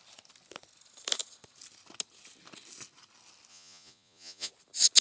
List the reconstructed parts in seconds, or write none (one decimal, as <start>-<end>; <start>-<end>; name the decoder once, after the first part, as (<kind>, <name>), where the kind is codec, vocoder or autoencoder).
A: 3.5-4.5 (vocoder, Vocos)